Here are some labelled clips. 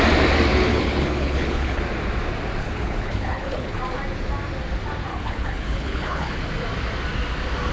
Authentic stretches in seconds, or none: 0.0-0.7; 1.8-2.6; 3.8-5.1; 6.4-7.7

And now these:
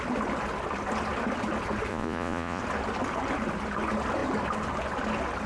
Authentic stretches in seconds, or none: 0.0-1.9; 2.6-5.5

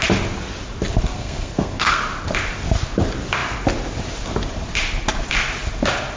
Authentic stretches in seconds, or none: 0.0-1.1; 2.0-6.2

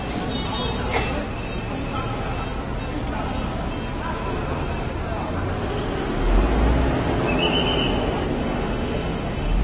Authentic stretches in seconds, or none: 0.0-8.4

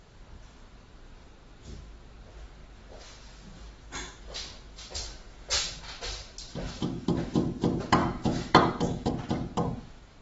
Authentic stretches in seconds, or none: 0.0-5.3; 5.8-6.5; 7.1-8.0; 9.1-10.2